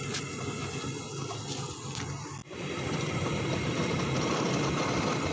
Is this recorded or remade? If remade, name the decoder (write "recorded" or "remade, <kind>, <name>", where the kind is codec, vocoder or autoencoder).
recorded